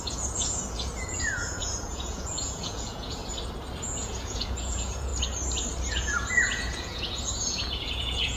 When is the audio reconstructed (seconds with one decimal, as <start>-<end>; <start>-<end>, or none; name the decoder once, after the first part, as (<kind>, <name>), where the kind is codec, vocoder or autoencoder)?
0.0-3.2 (vocoder, Vocos); 3.8-5.1; 5.9-8.4

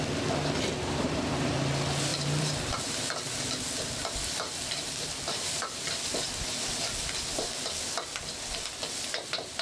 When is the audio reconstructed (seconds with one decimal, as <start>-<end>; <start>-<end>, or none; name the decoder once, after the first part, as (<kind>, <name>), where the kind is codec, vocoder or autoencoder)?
2.1-5.9 (vocoder, BigVGAN v2)

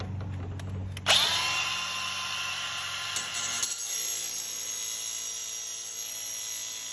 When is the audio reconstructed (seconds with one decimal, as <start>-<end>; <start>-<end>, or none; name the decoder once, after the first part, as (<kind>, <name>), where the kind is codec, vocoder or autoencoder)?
none

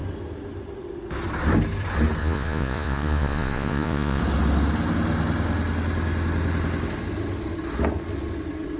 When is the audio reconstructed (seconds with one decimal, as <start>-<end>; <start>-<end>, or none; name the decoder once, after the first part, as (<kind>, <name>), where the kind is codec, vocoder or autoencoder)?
2.2-4.2 (vocoder, Vocos)

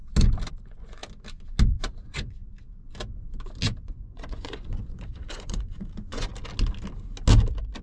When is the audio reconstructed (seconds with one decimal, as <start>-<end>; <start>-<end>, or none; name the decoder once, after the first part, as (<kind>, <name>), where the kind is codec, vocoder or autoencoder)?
0.5-1.0 (vocoder, Vocos); 1.8-2.4; 3.8-6.3